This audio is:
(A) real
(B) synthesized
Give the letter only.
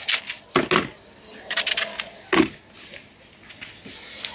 A